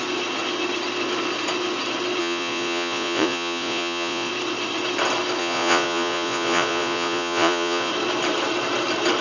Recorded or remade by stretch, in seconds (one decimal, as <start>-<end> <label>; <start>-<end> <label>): 0.0-2.2 recorded; 2.2-4.3 remade; 4.3-5.4 recorded; 5.4-7.9 remade; 7.9-9.2 recorded